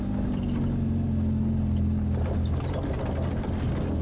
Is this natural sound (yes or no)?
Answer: yes